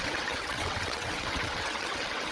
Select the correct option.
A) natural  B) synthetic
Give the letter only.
B